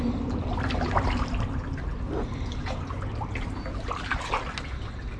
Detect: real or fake real